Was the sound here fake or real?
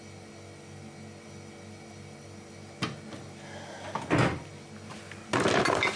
real